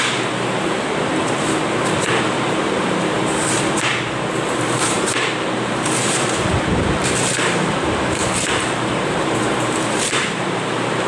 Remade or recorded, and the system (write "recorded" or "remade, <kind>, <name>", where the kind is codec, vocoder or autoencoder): remade, vocoder, BigVGAN v2